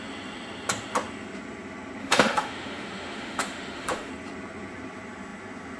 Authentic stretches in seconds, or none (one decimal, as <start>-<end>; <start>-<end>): 0.0-2.0; 4.1-5.8